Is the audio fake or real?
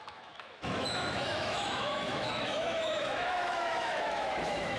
fake